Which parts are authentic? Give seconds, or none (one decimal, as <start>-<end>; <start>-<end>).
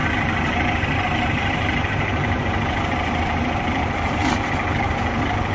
0.0-5.5